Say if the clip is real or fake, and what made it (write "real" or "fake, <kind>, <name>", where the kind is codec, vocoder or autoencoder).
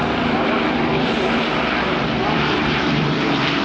fake, vocoder, BigVGAN v2